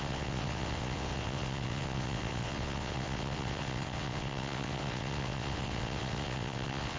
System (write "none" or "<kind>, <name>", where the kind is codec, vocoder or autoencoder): vocoder, WaveNeXt